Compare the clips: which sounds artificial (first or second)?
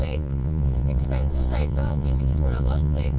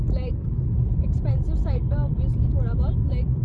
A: first